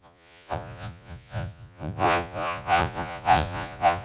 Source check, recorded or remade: remade